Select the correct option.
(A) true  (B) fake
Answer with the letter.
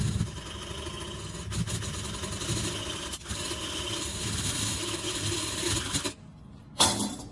A